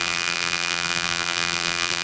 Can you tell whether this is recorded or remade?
remade